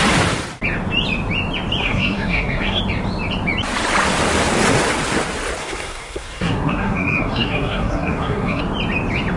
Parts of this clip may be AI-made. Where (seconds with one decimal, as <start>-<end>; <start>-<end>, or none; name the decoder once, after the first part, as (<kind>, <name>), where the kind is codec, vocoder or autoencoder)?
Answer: 1.8-2.8 (codec, SNAC); 5.6-8.6